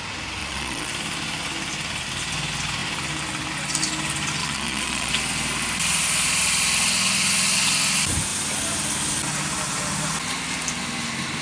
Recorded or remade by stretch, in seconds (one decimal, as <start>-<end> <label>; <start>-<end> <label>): 0.0-0.4 recorded; 0.4-0.9 remade; 0.9-4.4 recorded; 4.4-5.1 remade; 5.1-11.4 recorded